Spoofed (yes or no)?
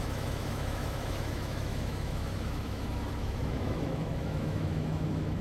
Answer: yes